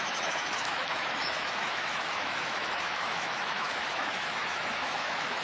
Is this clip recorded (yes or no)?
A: no